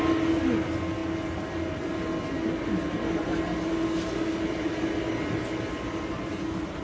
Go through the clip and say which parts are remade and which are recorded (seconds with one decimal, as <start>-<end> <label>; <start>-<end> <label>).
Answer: 0.0-6.8 recorded